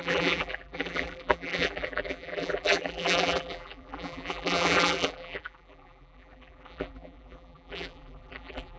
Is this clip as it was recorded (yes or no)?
no